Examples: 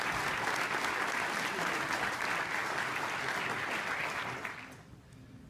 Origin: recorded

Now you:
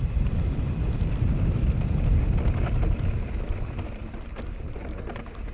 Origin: recorded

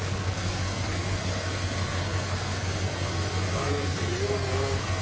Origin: remade